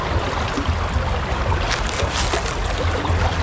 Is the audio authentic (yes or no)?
yes